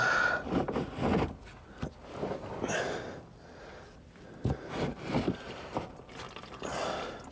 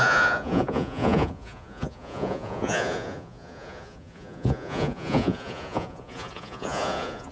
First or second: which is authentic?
first